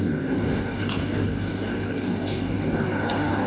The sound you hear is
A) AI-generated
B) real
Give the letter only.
A